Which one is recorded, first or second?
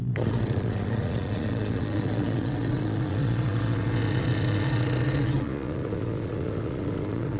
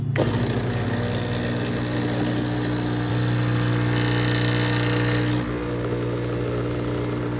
second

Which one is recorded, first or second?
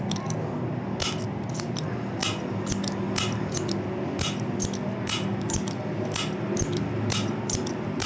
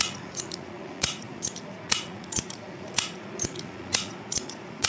first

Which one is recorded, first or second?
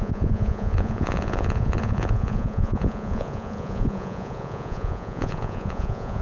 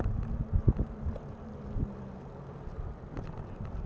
second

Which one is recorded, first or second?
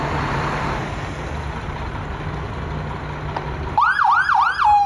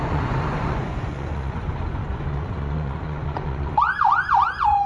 first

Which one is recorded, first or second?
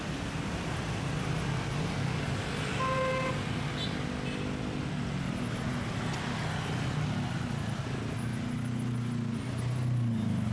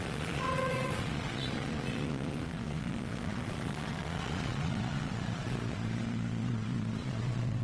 first